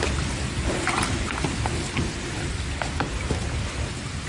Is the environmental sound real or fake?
real